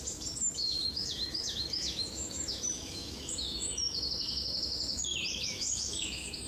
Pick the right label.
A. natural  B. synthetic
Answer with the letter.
B